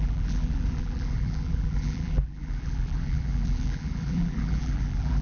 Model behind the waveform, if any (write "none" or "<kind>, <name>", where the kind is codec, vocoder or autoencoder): vocoder, BigVGAN v2